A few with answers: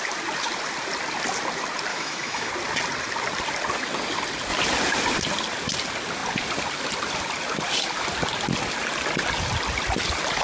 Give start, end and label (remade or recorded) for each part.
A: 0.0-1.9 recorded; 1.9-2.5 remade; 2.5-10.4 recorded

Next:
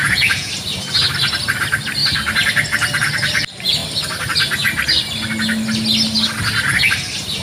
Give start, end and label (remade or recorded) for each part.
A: 0.0-0.5 remade; 0.5-7.4 recorded

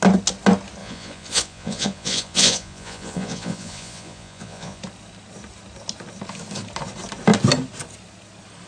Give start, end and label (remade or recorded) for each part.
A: 0.0-0.8 recorded; 0.8-4.8 remade; 4.8-8.7 recorded

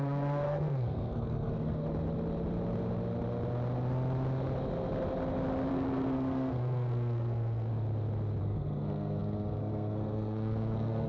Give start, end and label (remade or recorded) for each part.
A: 0.0-1.8 remade; 1.8-5.7 recorded; 5.7-7.7 remade; 7.7-8.4 recorded; 8.4-11.1 remade

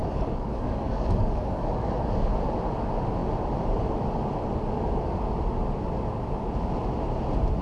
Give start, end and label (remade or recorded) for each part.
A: 0.0-2.3 remade; 2.3-7.6 recorded